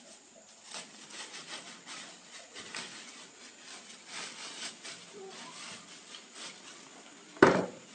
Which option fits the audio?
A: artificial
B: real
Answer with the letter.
B